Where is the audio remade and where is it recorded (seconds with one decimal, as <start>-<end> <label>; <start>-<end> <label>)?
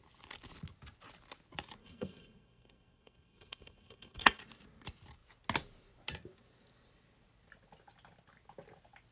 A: 0.0-1.8 recorded; 1.8-4.4 remade; 4.4-9.1 recorded